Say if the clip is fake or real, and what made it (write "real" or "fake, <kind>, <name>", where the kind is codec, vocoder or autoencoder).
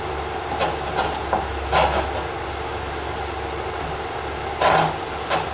real